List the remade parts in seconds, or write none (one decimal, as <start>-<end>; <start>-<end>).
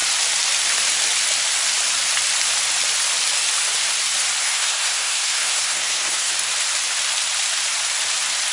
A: 4.4-6.3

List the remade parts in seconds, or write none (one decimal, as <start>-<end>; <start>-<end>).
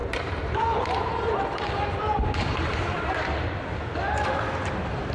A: 0.0-3.1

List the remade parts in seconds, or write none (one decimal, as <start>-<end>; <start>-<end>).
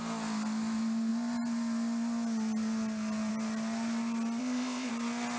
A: 4.4-4.9